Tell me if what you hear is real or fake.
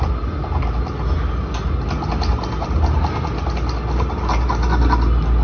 real